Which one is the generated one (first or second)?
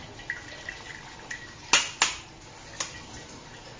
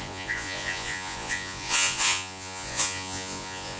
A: second